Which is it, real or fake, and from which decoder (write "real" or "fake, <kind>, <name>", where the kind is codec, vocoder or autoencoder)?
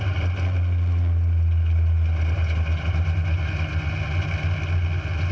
real